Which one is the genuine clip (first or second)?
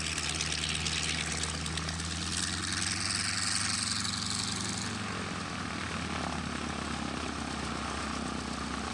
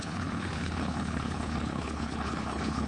first